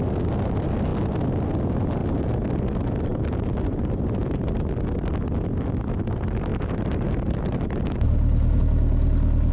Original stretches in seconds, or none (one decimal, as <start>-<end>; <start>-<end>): 0.0-3.1; 4.6-6.5; 8.6-9.5

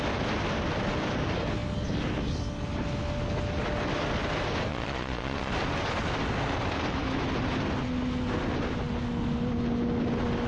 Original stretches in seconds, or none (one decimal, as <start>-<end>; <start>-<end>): 0.0-4.7; 5.5-10.5

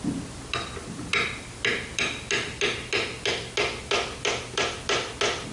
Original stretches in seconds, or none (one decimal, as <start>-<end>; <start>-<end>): 0.0-5.5

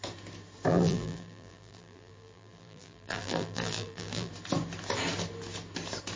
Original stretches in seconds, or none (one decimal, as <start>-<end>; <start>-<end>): 0.0-0.7; 4.3-6.2

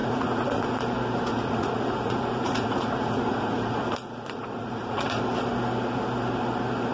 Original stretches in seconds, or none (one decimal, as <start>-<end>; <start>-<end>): 0.8-1.3; 5.2-6.9

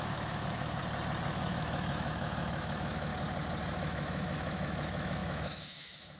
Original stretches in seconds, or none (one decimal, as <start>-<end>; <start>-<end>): 0.8-1.3; 3.1-3.7

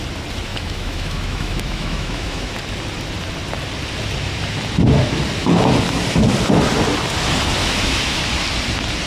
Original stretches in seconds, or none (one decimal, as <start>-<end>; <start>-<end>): 0.0-0.5; 2.5-7.6; 8.2-9.1

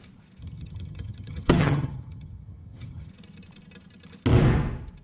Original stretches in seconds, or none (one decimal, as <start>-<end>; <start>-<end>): 0.0-0.4; 3.1-5.0